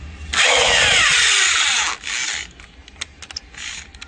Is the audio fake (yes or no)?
no